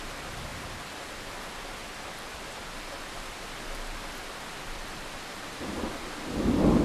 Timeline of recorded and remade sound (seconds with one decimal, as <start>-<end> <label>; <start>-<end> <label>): 0.0-1.8 recorded; 1.8-3.0 remade; 3.0-6.8 recorded